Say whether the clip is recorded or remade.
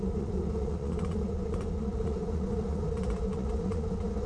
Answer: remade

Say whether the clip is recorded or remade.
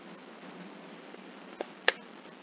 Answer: recorded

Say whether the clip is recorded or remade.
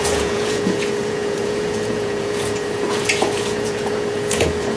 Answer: remade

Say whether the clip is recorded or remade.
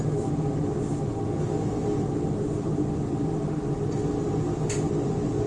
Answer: recorded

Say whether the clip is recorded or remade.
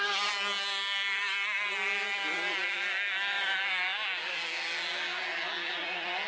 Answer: recorded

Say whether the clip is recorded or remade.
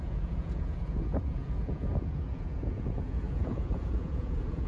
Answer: remade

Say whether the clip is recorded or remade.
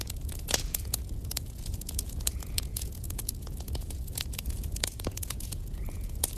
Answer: remade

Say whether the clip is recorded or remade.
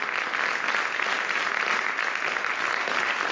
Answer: recorded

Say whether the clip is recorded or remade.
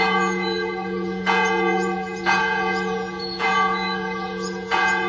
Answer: remade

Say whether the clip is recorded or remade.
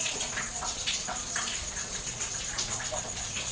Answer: remade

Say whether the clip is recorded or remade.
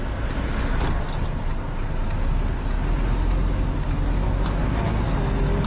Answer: recorded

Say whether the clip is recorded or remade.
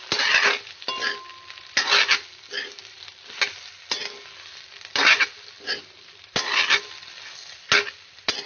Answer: recorded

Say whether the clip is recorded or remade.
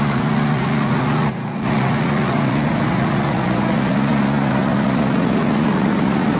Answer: remade